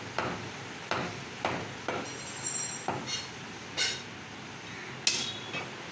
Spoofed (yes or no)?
no